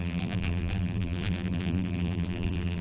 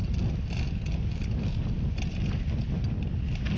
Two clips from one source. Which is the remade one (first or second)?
first